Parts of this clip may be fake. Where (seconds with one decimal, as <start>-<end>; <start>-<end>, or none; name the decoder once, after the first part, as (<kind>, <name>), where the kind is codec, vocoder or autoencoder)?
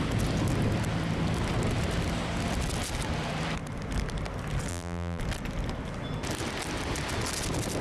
4.7-5.2 (vocoder, BigVGAN v2)